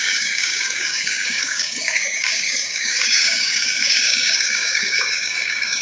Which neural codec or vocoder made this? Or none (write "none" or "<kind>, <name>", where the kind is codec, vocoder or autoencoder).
codec, DAC